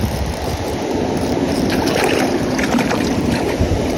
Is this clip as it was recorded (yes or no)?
no